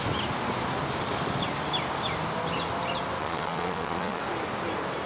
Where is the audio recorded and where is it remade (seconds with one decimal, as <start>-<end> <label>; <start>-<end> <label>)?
0.0-3.2 recorded; 3.2-4.2 remade; 4.2-5.1 recorded